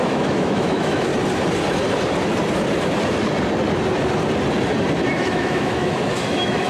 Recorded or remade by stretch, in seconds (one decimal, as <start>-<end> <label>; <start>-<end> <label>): 0.0-1.1 remade; 1.1-5.1 recorded; 5.1-6.7 remade